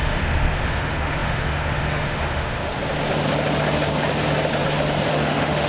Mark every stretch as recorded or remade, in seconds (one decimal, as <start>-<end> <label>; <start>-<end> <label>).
0.0-2.7 remade; 2.7-5.1 recorded; 5.1-5.7 remade